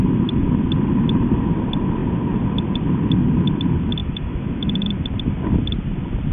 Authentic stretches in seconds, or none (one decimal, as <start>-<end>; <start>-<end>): 0.0-4.0; 4.9-6.3